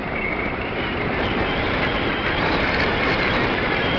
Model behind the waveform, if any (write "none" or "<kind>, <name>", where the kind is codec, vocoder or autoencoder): vocoder, BigVGAN v2